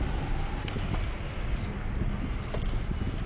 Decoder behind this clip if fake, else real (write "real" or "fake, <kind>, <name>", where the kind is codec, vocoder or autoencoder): real